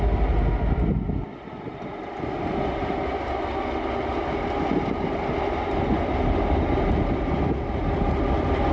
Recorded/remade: recorded